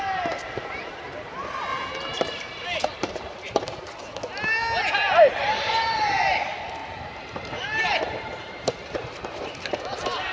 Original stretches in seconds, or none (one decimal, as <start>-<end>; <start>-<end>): 1.7-2.2; 4.0-5.2